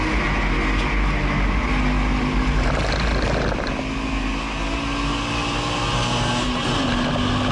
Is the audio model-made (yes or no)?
no